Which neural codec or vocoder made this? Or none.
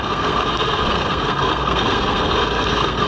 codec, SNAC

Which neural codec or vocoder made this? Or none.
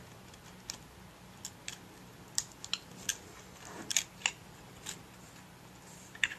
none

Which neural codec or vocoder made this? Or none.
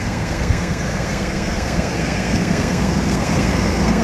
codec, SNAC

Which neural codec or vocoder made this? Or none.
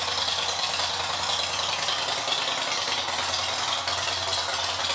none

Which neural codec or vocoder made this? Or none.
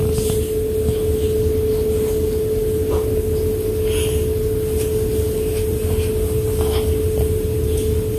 none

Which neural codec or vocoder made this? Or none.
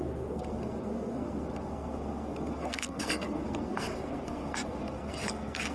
codec, SNAC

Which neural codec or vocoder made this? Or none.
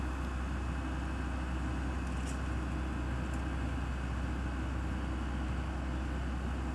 none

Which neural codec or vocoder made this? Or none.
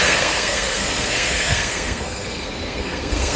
codec, SNAC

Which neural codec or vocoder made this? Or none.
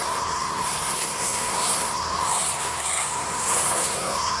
codec, SNAC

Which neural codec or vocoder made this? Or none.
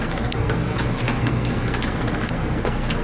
codec, SNAC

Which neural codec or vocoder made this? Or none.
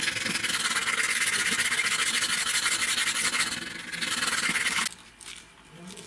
none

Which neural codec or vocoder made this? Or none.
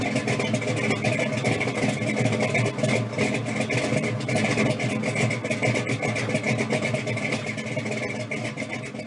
none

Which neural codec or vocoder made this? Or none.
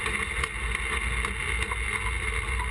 none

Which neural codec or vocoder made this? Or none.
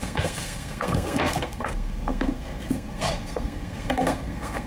codec, SNAC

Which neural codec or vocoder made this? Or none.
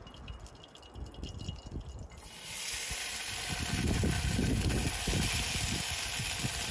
none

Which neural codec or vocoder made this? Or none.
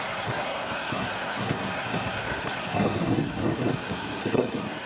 codec, SNAC